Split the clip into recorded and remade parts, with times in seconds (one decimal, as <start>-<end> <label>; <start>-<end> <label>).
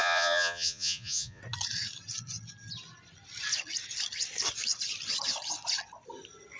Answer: 0.0-1.4 remade; 1.4-6.6 recorded